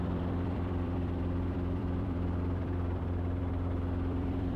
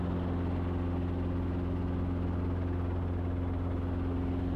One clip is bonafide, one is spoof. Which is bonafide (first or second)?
second